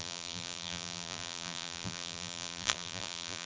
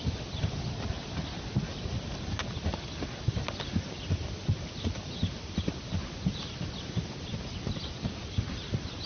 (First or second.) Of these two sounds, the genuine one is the second